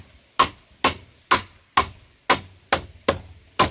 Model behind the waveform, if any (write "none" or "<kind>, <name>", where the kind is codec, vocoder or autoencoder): none